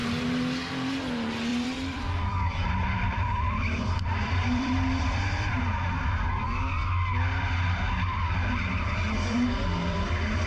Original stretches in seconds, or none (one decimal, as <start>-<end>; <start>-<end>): 0.0-1.5; 5.5-9.8